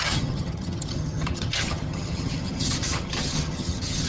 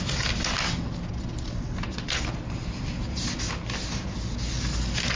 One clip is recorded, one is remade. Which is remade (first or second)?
first